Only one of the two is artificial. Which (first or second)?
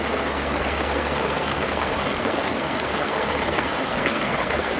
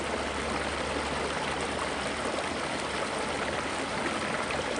first